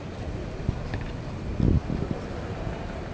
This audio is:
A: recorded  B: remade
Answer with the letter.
A